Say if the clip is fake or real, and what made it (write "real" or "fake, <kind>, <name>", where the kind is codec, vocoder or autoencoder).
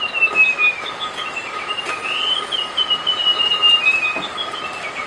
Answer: real